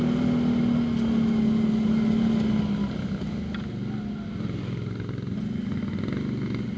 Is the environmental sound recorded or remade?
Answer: recorded